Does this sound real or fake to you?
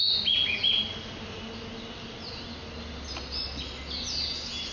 real